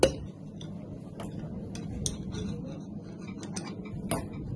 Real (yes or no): yes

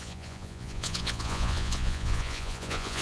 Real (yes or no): no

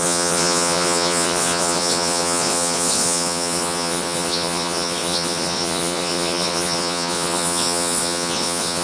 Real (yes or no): no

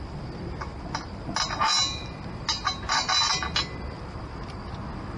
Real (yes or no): yes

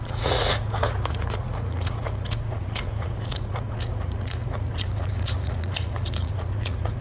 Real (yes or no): no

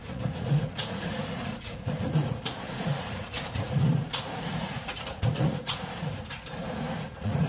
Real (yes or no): no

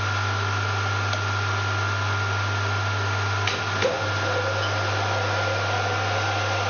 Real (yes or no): yes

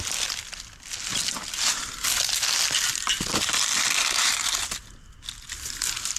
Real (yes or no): yes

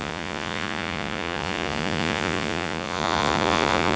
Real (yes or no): no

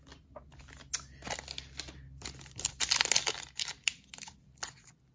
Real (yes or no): yes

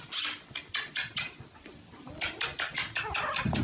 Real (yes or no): yes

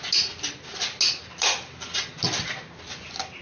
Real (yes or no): yes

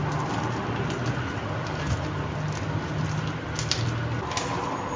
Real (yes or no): yes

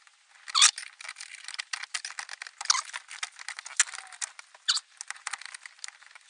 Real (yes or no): yes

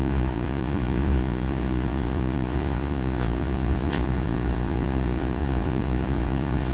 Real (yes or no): no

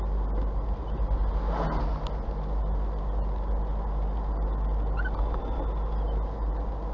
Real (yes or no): yes